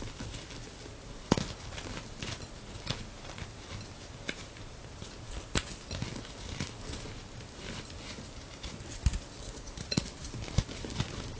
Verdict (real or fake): real